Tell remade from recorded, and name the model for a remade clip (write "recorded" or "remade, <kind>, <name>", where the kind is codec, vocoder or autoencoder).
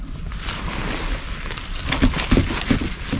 recorded